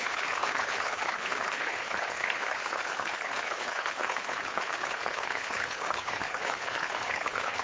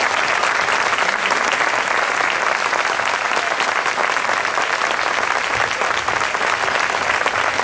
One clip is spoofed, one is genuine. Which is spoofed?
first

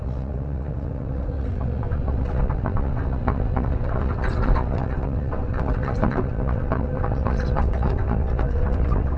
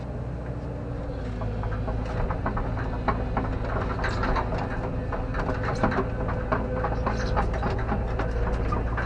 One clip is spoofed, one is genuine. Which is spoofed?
first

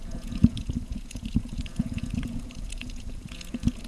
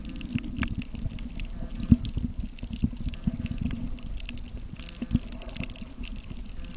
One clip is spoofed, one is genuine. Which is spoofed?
first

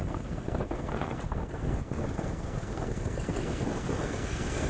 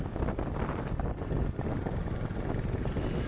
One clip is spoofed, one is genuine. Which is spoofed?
first